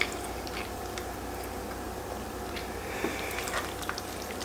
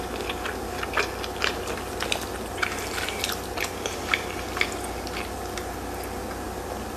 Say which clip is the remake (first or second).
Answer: first